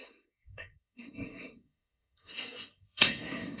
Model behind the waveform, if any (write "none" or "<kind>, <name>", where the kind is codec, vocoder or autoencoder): codec, SNAC